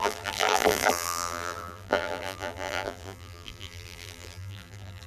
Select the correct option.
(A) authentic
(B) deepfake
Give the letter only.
B